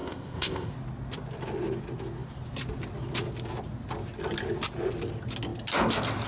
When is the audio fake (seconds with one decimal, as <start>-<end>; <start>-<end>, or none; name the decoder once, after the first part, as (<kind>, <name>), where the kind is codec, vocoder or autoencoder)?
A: 0.0-0.7 (codec, ZipCodec)